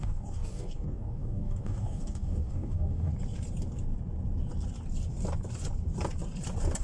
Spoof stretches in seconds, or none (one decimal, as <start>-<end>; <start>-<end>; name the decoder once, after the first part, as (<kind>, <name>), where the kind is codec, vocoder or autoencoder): 0.0-3.1 (codec, DAC)